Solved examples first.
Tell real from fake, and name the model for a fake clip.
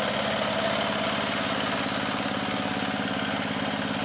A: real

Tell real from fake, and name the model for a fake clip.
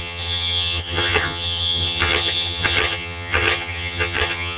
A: fake, vocoder, HiFi-GAN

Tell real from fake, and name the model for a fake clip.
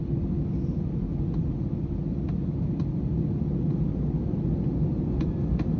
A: real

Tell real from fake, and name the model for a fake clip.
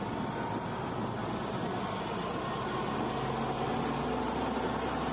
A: real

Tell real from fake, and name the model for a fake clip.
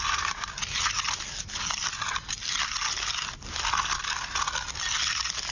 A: real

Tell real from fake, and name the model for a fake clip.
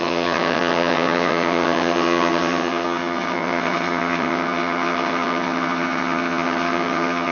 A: fake, vocoder, HiFi-GAN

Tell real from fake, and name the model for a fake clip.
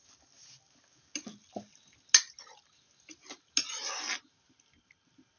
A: real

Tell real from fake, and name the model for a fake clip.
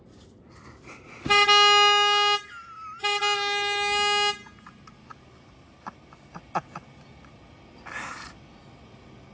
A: real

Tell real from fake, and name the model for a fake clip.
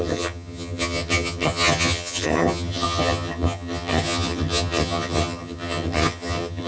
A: fake, vocoder, HiFi-GAN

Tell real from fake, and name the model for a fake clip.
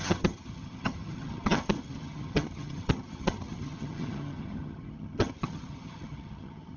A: fake, vocoder, HiFi-GAN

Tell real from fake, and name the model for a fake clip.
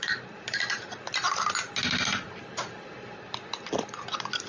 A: real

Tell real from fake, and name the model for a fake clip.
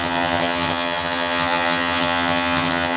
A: fake, vocoder, HiFi-GAN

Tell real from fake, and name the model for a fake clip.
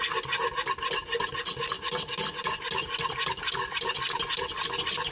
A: real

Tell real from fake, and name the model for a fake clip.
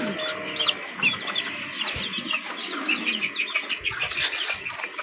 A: real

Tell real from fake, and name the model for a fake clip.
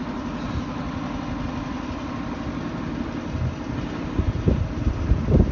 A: real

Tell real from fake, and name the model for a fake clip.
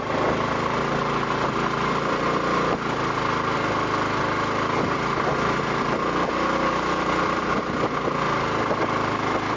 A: real